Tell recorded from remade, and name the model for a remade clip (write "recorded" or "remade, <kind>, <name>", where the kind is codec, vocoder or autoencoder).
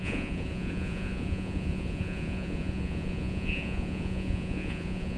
remade, vocoder, Vocos